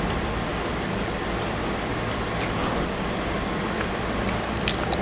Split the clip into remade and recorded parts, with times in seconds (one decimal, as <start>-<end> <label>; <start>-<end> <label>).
0.0-5.0 recorded